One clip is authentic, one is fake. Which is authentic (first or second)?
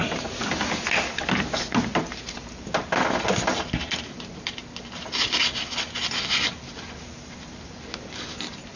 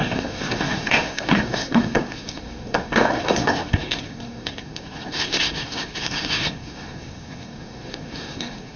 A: first